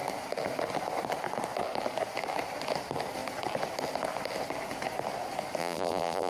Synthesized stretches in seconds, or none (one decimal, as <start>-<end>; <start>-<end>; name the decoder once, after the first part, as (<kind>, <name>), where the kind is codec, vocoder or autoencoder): 5.6-6.3 (vocoder, BigVGAN v2)